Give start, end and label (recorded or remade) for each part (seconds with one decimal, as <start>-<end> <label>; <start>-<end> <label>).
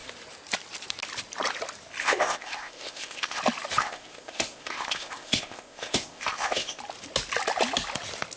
0.0-2.0 recorded; 2.0-3.4 remade; 3.4-3.8 recorded; 3.8-6.8 remade; 6.8-8.4 recorded